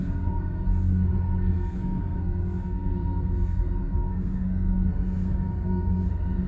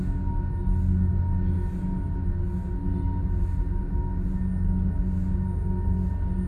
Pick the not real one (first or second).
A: first